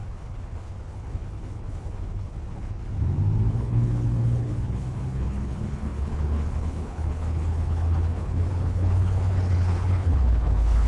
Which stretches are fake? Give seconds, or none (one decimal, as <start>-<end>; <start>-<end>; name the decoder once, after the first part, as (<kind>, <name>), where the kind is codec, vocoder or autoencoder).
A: 0.0-2.8 (codec, HILCodec); 3.5-10.9